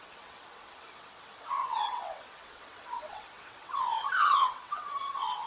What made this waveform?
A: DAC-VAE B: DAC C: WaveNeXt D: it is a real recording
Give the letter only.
C